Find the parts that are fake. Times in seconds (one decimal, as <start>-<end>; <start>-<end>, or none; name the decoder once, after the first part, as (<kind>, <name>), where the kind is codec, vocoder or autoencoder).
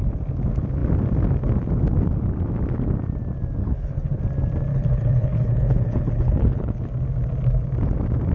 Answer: 3.6-4.2 (codec, HILCodec); 4.7-6.9